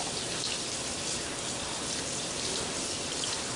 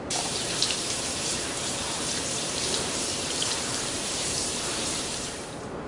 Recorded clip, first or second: first